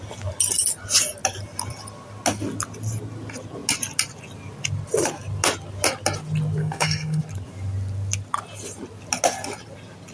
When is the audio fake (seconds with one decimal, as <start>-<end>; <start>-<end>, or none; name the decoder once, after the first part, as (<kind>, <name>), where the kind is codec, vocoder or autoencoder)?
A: 6.6-7.2 (codec, SNAC)